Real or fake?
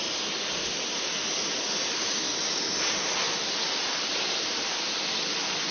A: real